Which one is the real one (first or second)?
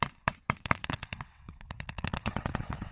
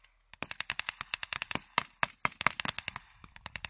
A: second